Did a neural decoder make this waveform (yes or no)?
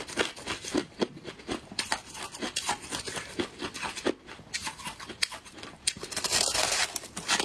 no